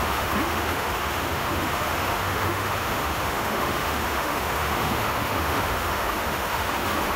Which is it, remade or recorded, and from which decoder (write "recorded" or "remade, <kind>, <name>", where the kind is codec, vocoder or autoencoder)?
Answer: remade, autoencoder, DAC-VAE